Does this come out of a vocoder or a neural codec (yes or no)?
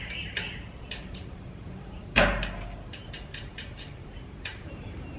yes